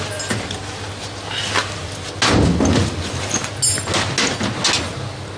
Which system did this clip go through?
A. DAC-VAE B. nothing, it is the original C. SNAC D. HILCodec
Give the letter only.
B